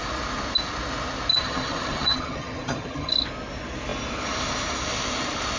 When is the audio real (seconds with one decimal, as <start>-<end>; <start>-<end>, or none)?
0.0-1.3; 3.1-5.6